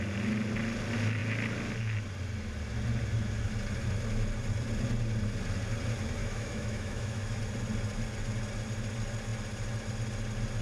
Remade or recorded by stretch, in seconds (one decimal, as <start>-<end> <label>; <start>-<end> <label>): 0.0-6.2 recorded; 6.2-7.4 remade; 7.4-10.6 recorded

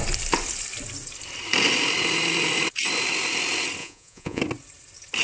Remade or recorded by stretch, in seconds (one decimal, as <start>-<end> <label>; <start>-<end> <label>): 0.0-3.8 recorded; 3.8-4.4 remade; 4.4-5.2 recorded

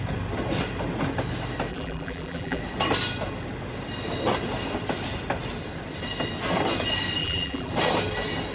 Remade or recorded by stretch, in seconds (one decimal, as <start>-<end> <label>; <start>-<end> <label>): 0.0-1.7 recorded; 1.7-2.6 remade; 2.6-7.2 recorded; 7.2-7.7 remade; 7.7-8.5 recorded

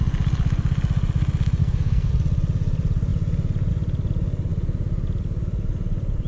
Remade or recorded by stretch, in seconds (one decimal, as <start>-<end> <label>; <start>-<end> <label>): 0.0-1.6 recorded; 1.6-2.1 remade; 2.1-6.3 recorded

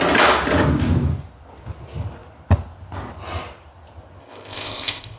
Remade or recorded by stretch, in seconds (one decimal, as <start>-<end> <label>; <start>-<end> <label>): 0.0-4.2 recorded; 4.2-5.2 remade

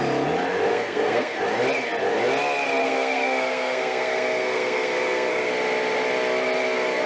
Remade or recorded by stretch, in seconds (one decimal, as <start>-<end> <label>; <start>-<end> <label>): 0.0-0.7 recorded; 0.7-1.4 remade; 1.4-2.8 recorded; 2.8-5.5 remade; 5.5-7.1 recorded